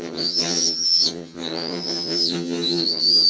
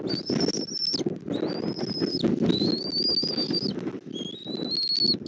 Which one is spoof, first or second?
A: first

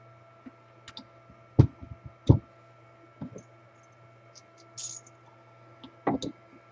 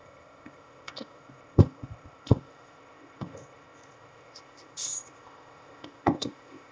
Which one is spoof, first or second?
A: second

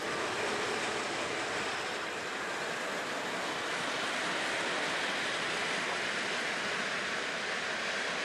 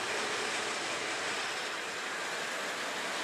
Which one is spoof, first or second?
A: first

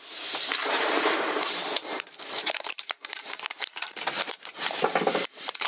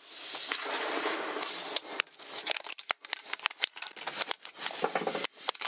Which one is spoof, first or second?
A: first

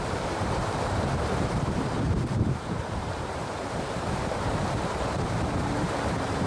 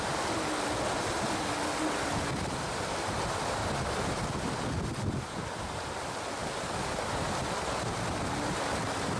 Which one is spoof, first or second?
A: first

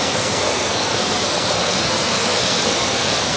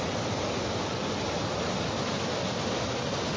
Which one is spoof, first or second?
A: first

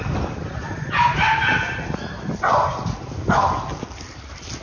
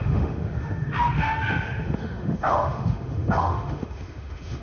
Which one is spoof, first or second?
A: second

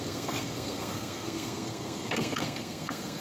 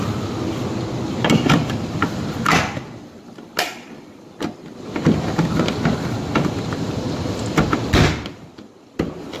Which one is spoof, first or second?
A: first